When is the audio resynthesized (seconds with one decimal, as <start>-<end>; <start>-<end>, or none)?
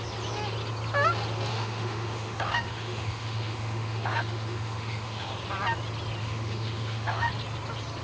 1.5-5.3; 6.2-7.3